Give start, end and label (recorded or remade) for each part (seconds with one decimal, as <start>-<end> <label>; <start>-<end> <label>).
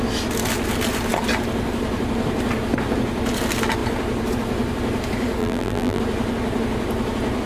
0.0-5.4 recorded; 5.4-6.0 remade; 6.0-7.5 recorded